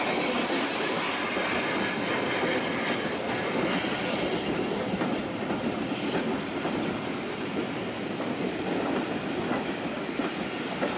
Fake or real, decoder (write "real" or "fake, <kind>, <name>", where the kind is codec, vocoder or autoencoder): real